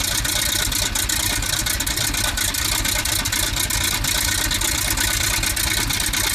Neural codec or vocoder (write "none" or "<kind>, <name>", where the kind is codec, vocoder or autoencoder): none